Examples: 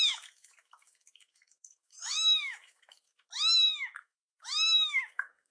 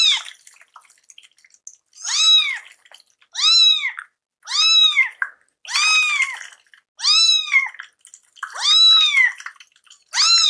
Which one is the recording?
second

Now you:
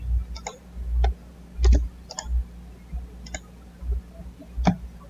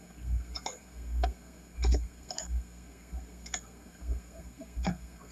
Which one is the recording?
first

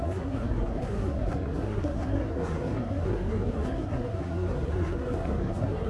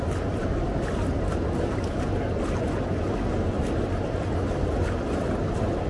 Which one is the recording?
second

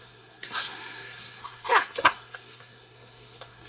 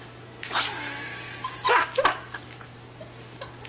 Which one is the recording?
second